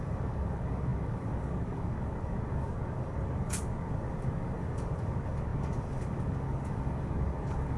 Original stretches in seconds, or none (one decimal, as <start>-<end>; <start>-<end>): none